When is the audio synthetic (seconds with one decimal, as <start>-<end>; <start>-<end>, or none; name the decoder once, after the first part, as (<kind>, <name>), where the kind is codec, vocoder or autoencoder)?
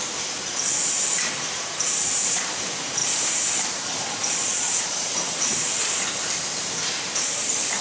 0.0-5.8 (vocoder, BigVGAN v2); 6.9-7.8